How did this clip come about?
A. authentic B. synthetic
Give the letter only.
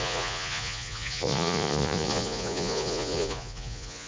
B